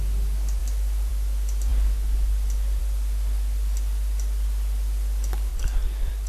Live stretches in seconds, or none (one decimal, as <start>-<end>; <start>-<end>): 0.0-0.6; 1.1-5.5

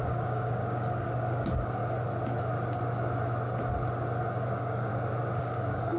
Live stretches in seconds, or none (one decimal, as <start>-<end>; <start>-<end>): 1.8-4.5; 4.9-5.4

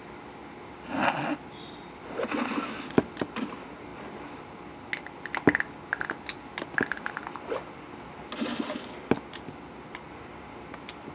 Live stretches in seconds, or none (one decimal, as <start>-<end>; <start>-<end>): 0.0-11.1

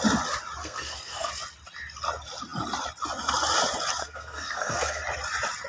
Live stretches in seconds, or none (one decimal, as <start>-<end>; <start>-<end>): 0.0-0.6; 1.3-4.0; 5.0-5.7

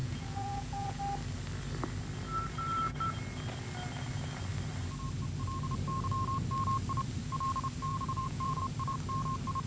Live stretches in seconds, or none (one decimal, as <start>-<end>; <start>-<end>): 1.0-7.9; 8.6-9.7

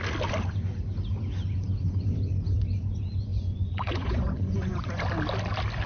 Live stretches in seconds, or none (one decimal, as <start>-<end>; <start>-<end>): 0.0-3.3; 5.0-5.9

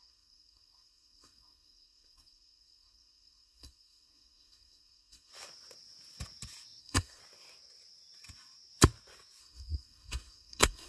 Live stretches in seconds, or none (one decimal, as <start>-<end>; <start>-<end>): 5.3-6.8; 7.2-9.4